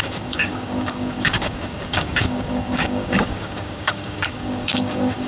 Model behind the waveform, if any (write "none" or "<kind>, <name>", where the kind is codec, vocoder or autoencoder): codec, DAC